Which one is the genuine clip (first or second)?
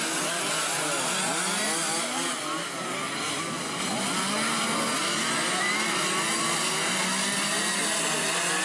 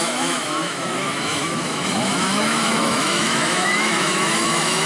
first